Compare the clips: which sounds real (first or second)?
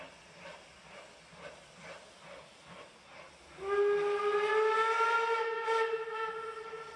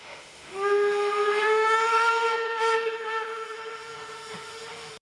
first